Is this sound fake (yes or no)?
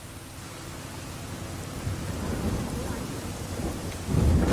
no